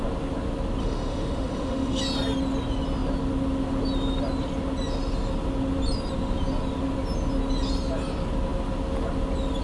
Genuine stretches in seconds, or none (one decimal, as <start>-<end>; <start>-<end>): 0.0-0.8; 2.0-9.6